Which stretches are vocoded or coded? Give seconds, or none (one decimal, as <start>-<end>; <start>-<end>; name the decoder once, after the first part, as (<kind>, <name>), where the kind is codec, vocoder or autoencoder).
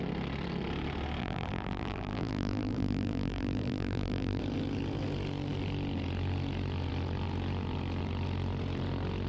1.2-4.4 (vocoder, BigVGAN v2)